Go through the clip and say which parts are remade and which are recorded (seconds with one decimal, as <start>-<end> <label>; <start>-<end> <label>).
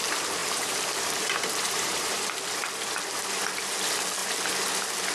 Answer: 0.0-0.4 recorded; 0.4-2.3 remade; 2.3-5.1 recorded